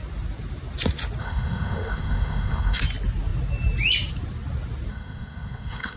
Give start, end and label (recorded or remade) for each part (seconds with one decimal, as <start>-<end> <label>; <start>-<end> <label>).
0.0-1.2 recorded; 1.2-2.8 remade; 2.8-4.9 recorded; 4.9-6.0 remade